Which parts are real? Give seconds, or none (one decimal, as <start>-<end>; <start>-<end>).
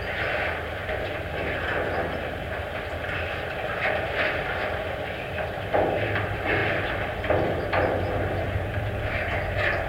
0.0-9.9